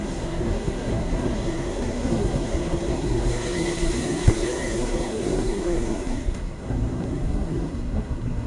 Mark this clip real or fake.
fake